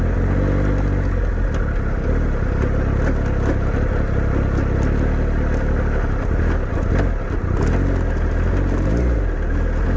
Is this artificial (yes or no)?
no